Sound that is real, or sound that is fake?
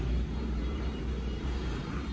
fake